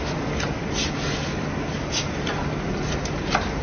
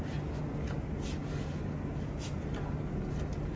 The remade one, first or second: first